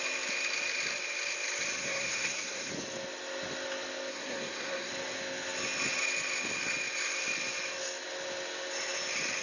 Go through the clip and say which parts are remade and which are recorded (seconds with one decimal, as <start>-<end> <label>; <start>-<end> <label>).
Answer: 0.0-1.8 recorded; 1.8-2.7 remade; 2.7-4.1 recorded; 4.1-4.9 remade; 4.9-9.4 recorded